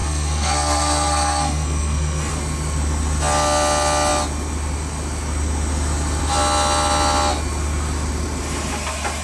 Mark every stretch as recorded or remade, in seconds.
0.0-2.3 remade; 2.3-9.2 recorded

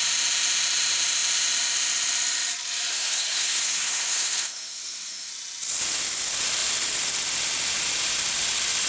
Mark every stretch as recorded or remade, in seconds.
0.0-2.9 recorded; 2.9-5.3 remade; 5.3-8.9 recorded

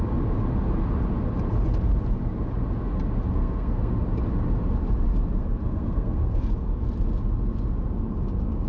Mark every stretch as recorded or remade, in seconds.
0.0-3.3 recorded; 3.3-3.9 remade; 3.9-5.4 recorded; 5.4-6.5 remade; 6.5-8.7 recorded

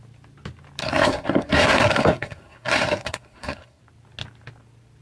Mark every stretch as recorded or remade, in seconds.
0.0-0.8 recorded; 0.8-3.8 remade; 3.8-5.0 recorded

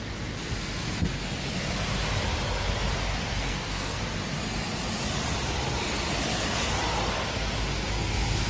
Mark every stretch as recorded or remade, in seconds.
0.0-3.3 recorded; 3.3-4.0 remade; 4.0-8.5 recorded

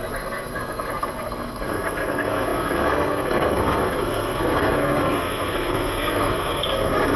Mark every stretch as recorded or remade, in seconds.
0.0-7.2 remade

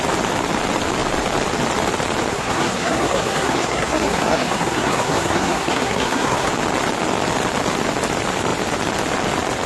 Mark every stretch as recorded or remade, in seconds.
0.0-2.3 recorded; 2.3-6.5 remade; 6.5-9.7 recorded